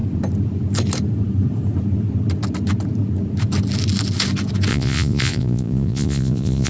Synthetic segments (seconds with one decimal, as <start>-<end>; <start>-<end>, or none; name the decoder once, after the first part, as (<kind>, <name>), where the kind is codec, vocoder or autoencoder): 4.7-6.7 (vocoder, Vocos)